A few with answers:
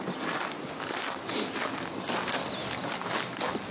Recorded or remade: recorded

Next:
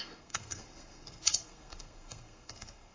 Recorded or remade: remade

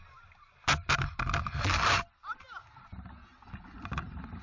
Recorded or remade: recorded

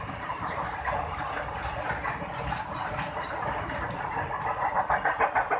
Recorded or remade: recorded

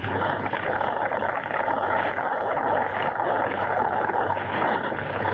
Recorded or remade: remade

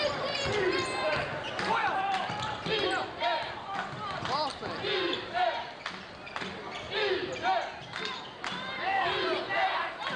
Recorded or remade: recorded